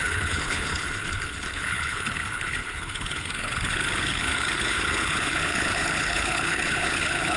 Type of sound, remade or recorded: remade